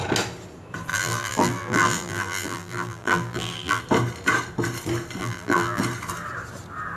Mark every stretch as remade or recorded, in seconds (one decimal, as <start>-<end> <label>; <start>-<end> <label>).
0.0-0.9 recorded; 0.9-3.8 remade; 3.8-5.2 recorded; 5.2-5.8 remade; 5.8-7.0 recorded